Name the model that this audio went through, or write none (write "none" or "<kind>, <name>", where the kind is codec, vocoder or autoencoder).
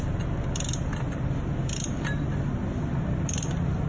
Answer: none